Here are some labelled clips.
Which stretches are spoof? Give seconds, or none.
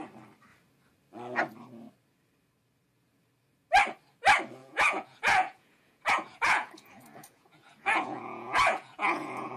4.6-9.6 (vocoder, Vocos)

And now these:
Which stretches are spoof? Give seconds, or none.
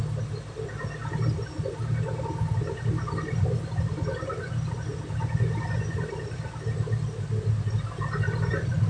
none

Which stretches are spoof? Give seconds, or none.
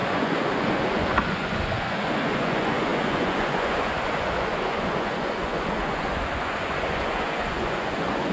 0.0-8.3 (vocoder, Vocos)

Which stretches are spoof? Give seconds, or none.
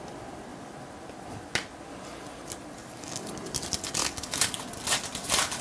2.8-3.3 (codec, DAC); 4.0-4.6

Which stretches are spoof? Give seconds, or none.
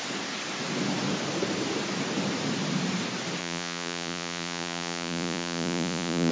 3.4-6.3 (vocoder, Vocos)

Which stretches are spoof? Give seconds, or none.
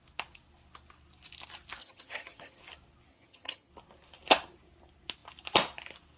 1.8-2.6 (vocoder, HiFi-GAN); 3.1-3.7